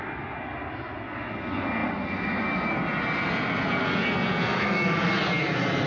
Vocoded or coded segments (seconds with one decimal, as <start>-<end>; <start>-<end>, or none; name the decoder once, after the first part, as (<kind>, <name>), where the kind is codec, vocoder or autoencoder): 4.5-5.1 (autoencoder, DAC-VAE)

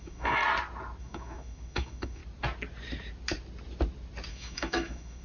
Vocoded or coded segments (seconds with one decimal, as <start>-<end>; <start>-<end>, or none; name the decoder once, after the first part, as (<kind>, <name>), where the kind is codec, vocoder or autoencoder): 0.0-0.4 (autoencoder, DAC-VAE); 1.0-2.2; 4.3-5.2

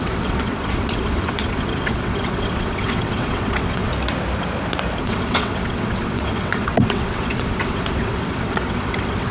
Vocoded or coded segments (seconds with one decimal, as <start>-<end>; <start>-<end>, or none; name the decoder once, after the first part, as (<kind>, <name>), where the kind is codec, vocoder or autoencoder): 0.0-3.9 (vocoder, WaveNeXt); 5.0-9.3

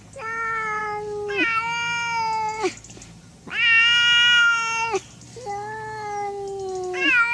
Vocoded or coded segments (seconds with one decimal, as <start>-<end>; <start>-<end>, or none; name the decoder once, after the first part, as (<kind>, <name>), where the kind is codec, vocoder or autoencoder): none

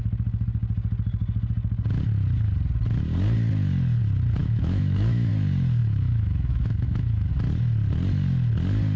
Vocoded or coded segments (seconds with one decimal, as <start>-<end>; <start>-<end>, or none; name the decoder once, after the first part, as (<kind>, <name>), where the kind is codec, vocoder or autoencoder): 4.4-5.3 (autoencoder, DAC-VAE); 5.8-7.3